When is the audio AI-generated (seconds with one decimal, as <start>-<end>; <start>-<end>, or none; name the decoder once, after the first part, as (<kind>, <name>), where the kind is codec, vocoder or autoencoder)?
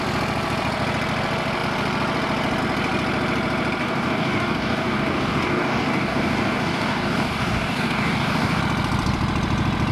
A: 3.8-8.6 (codec, DAC)